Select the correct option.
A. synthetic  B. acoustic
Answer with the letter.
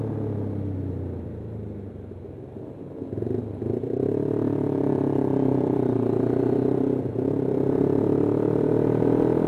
B